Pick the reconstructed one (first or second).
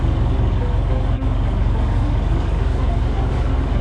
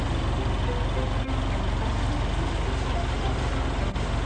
first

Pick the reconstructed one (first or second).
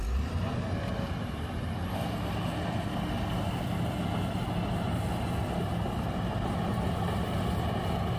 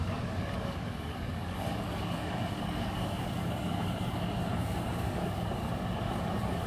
second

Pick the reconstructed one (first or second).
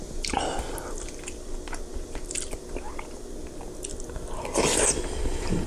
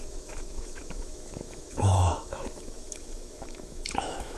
second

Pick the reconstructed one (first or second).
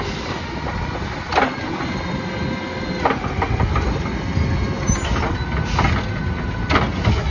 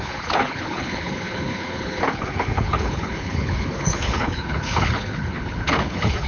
second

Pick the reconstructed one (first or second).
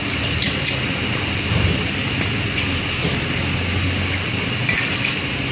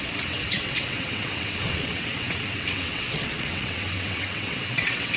second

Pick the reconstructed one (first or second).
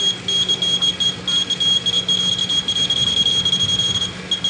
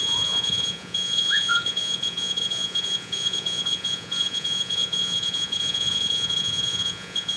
second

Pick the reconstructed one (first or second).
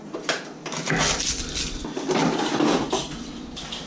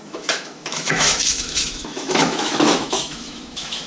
second